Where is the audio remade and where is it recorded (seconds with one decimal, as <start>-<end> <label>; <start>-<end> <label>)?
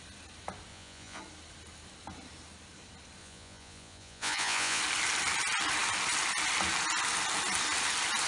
0.0-0.7 recorded; 0.7-1.2 remade; 1.2-3.2 recorded; 3.2-4.8 remade; 4.8-8.3 recorded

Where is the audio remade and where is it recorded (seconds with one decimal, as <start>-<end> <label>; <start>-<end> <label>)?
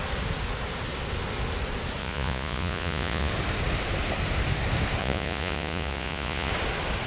0.0-2.0 recorded; 2.0-3.3 remade; 3.3-5.0 recorded; 5.0-6.5 remade; 6.5-7.1 recorded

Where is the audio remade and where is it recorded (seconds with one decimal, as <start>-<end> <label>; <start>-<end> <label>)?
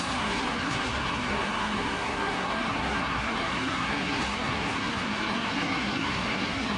0.0-6.8 remade